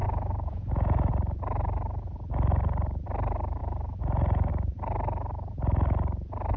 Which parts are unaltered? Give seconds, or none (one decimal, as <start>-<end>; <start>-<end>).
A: 1.1-3.6; 4.5-6.6